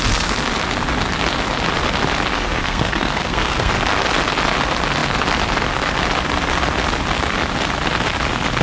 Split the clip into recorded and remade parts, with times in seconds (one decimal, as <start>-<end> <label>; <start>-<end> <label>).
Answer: 0.0-2.3 recorded; 2.3-3.7 remade; 3.7-8.6 recorded